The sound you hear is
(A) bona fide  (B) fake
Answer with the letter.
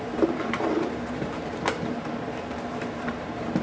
B